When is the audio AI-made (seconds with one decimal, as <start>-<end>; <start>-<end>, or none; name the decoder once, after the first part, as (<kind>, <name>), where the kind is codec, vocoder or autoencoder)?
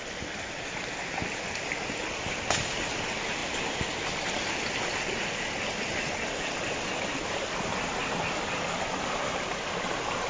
none